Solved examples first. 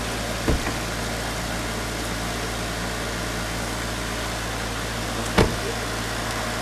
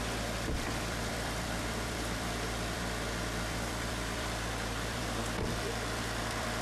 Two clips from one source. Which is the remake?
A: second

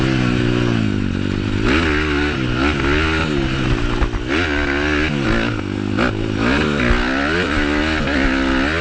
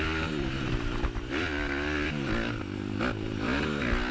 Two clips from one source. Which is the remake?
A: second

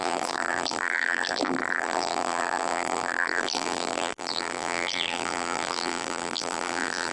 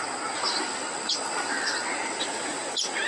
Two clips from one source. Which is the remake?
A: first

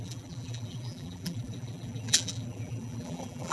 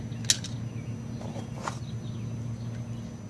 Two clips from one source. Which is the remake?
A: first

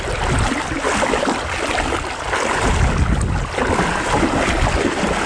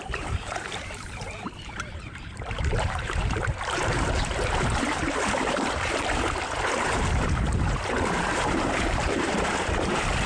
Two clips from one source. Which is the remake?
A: second